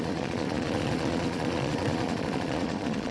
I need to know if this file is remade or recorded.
remade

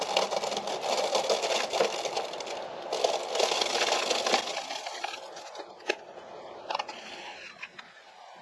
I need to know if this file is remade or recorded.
recorded